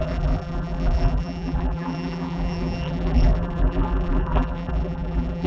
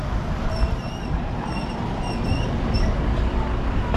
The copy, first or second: first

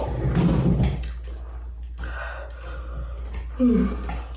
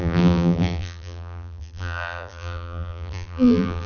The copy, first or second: second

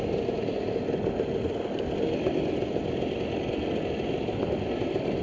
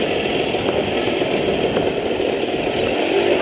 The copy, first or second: second